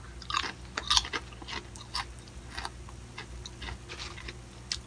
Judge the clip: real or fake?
real